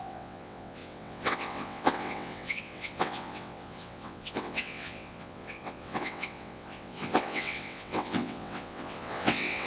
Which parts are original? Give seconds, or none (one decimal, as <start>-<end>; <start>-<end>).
none